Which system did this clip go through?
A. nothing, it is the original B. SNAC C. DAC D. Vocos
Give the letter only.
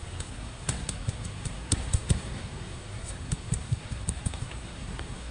B